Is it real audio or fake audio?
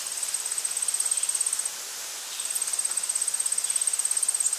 real